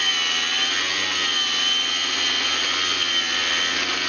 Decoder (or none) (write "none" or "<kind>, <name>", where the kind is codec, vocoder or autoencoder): none